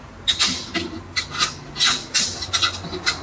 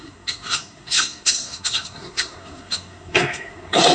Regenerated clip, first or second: second